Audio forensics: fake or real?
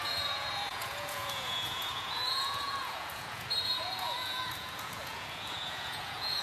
fake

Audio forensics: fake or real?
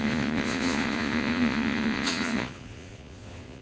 fake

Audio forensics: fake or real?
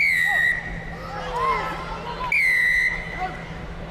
real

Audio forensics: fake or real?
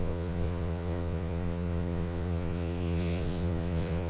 fake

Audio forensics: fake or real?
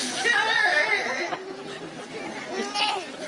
real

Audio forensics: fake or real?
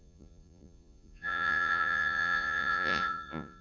fake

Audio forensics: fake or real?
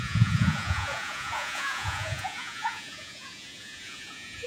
fake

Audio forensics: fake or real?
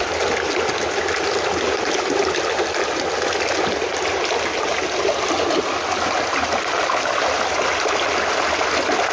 real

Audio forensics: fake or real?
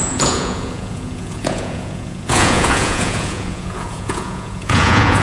fake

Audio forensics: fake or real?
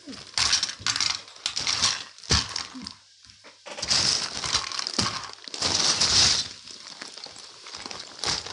real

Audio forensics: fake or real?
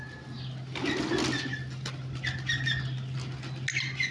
real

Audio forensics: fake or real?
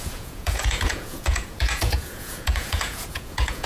fake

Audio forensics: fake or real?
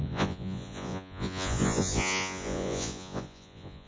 fake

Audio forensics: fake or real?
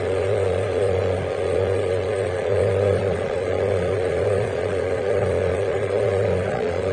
fake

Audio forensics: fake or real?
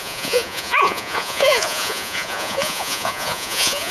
fake